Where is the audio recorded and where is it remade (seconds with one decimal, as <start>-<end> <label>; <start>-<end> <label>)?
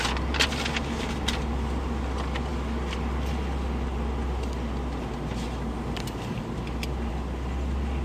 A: 0.0-8.0 recorded